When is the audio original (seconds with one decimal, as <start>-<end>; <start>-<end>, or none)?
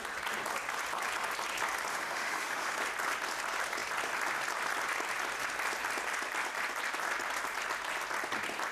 0.0-1.9; 2.8-8.7